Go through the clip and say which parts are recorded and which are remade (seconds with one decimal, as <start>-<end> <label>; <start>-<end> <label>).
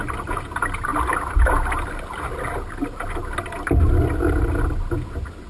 0.0-5.5 recorded